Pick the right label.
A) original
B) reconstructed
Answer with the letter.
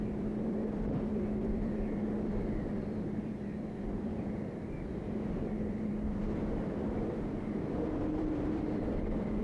B